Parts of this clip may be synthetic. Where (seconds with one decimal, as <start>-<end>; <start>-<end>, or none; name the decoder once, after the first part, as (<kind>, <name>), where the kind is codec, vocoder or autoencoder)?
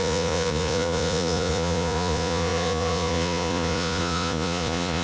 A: 0.0-5.0 (vocoder, Vocos)